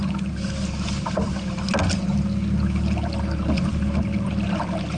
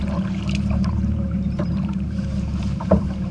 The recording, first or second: first